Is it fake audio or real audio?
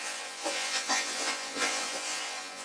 fake